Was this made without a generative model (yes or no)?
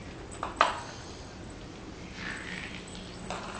yes